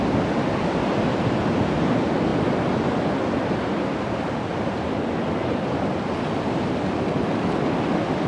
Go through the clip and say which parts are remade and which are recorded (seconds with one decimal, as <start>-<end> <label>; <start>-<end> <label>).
0.0-8.3 recorded